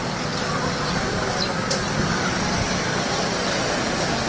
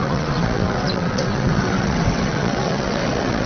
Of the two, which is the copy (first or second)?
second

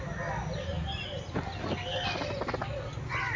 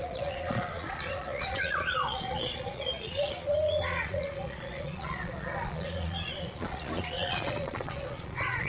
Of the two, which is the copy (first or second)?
second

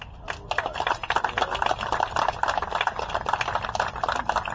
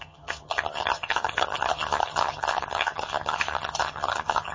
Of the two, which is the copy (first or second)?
second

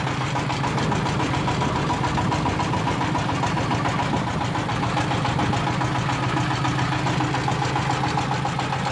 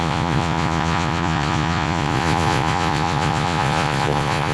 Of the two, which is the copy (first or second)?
second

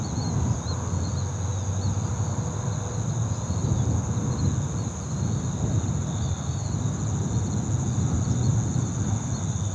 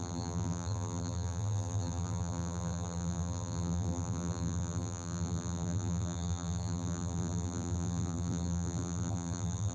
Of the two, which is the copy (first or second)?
second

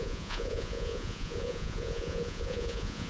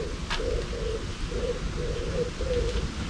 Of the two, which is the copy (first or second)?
first